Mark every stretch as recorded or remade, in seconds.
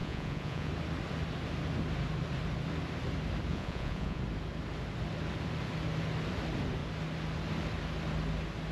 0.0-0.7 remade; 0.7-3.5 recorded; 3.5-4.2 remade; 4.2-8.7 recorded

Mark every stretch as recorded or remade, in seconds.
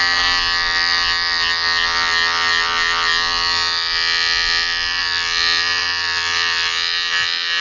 0.0-7.6 recorded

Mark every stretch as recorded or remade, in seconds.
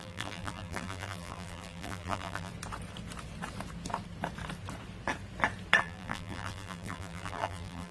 0.0-2.5 remade; 2.5-5.8 recorded; 5.8-7.9 remade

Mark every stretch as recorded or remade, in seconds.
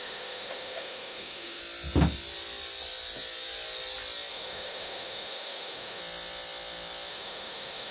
0.0-1.6 remade; 1.6-4.3 recorded; 4.3-6.0 remade; 6.0-7.1 recorded; 7.1-7.9 remade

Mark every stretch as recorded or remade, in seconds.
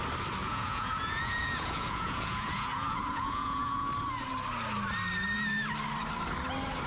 0.0-0.4 recorded; 0.4-3.9 remade; 3.9-6.9 recorded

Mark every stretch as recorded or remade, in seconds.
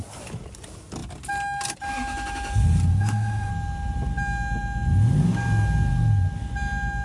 0.0-2.9 recorded; 2.9-3.5 remade; 3.5-7.0 recorded